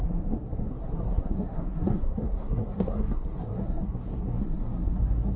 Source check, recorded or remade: remade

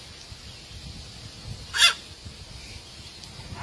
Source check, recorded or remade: recorded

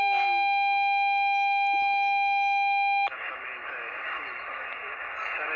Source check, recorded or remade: recorded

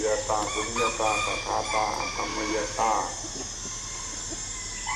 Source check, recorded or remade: recorded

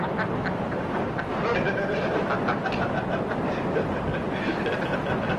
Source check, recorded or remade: recorded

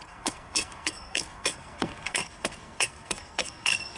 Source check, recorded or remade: remade